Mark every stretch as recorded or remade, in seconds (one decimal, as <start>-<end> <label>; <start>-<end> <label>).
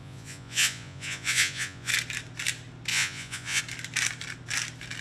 0.0-1.9 remade; 1.9-2.9 recorded; 2.9-3.6 remade; 3.6-5.0 recorded